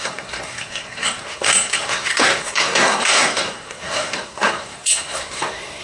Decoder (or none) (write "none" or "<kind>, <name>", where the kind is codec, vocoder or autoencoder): codec, SNAC